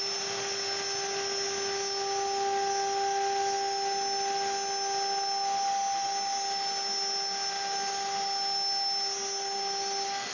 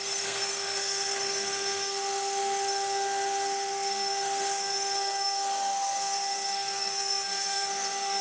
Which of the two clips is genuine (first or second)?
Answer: first